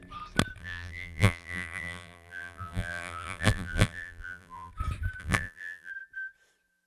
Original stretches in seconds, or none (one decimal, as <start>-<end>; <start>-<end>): 0.0-0.6; 4.7-5.2; 5.9-6.9